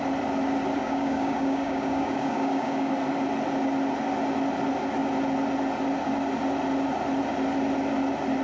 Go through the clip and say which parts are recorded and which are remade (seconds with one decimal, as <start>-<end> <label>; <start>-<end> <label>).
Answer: 0.0-0.8 recorded; 0.8-2.9 remade; 2.9-8.4 recorded